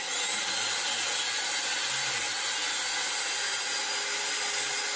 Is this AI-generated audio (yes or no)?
no